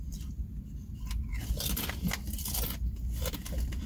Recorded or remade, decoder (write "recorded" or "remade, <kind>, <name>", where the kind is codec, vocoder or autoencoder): recorded